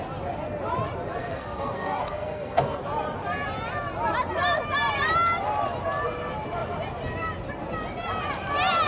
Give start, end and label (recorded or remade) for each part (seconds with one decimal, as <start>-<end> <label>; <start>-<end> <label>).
0.0-1.2 recorded; 1.2-2.8 remade; 2.8-8.9 recorded